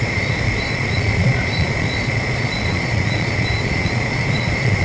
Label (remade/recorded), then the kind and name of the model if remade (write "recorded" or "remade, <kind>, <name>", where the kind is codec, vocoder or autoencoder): remade, vocoder, Vocos